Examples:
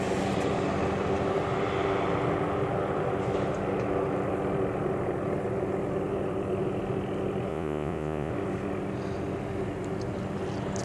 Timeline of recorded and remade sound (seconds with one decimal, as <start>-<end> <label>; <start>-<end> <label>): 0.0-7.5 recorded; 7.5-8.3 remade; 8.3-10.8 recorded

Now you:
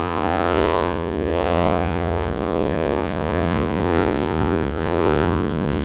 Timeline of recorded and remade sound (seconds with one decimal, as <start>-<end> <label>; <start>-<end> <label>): 0.0-5.8 remade

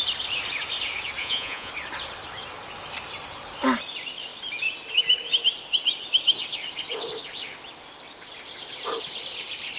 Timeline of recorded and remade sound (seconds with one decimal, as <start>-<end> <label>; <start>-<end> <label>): 0.0-1.2 recorded; 1.2-1.7 remade; 1.7-9.8 recorded

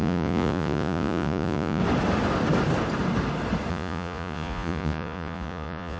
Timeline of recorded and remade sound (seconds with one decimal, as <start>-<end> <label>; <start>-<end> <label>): 0.0-1.8 remade; 1.8-3.7 recorded; 3.7-6.0 remade

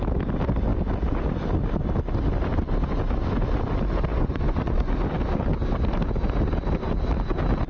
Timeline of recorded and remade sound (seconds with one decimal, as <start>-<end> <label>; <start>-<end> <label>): 0.0-4.1 recorded; 4.1-4.9 remade; 4.9-7.7 recorded

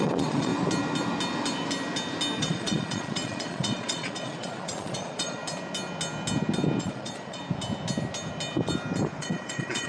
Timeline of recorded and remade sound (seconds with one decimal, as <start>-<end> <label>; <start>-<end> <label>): 0.0-0.5 remade; 0.5-2.4 recorded; 2.4-5.4 remade; 5.4-6.8 recorded; 6.8-7.4 remade; 7.4-9.2 recorded; 9.2-9.9 remade